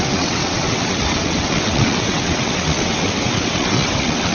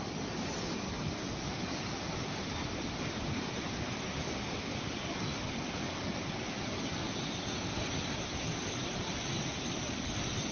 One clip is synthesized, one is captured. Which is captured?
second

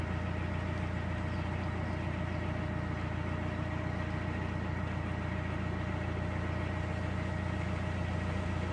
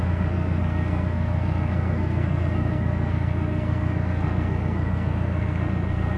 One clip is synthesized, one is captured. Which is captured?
first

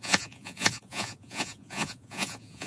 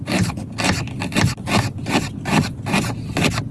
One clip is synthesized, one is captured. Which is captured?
second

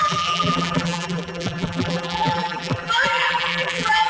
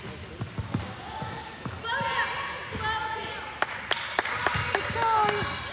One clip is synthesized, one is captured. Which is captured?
second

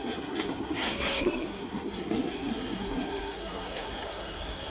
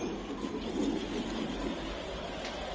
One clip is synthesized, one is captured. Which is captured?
second